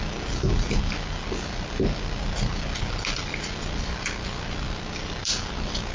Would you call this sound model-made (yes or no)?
no